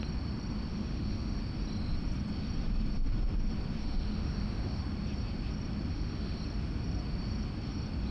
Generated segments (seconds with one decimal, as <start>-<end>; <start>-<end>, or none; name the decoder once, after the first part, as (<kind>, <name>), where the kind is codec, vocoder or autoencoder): 0.7-1.4 (autoencoder, DAC-VAE); 3.8-4.8; 5.9-6.4